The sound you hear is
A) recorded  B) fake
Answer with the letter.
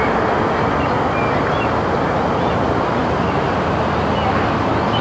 A